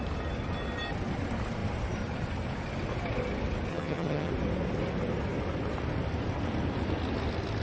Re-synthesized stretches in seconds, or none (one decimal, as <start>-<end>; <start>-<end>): 3.7-4.3